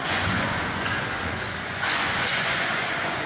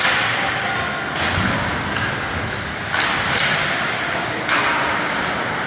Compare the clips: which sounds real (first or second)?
second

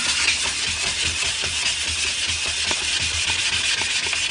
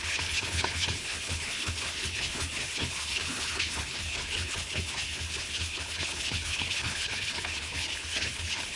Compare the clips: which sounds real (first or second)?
first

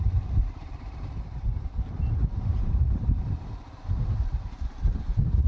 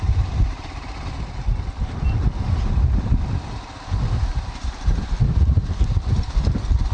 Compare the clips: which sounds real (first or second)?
second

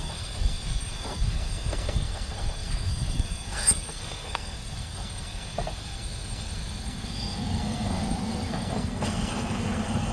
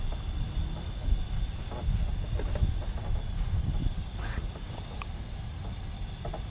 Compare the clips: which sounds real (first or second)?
second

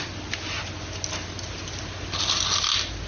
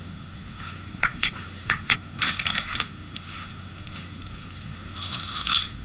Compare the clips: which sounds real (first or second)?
first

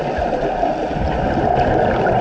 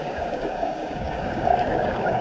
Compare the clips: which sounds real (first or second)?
first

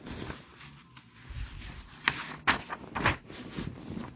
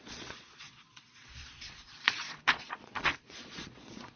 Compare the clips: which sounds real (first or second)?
first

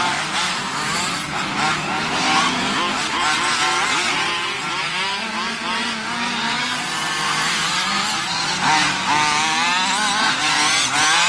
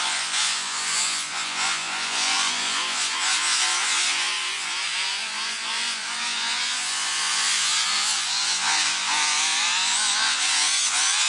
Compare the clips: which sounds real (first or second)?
first